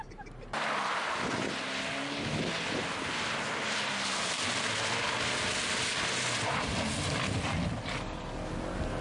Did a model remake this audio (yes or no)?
no